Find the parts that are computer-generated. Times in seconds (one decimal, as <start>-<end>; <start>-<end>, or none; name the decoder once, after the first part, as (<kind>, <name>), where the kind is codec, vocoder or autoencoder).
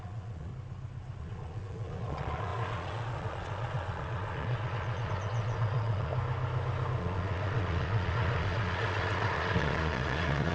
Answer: 0.0-0.5 (vocoder, Vocos); 1.2-6.1; 7.0-10.5